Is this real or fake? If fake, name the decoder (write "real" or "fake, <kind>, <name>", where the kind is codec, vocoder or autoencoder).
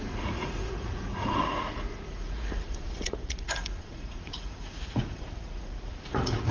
fake, vocoder, Vocos